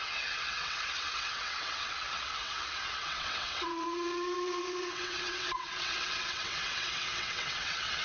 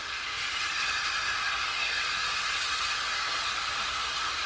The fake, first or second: first